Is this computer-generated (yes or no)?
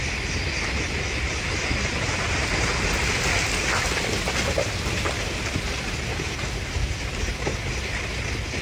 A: no